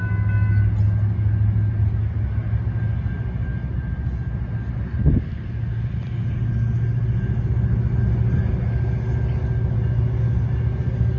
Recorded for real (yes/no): yes